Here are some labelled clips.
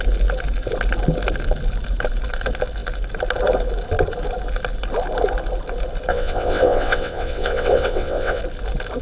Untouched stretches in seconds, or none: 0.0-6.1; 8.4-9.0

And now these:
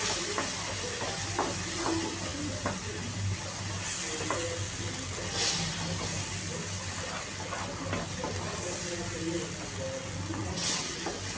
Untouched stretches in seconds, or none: 0.0-10.4; 11.0-11.4

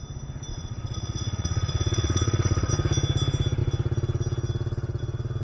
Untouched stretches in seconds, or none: 0.0-0.5; 2.7-5.4